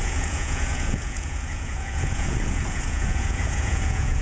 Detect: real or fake fake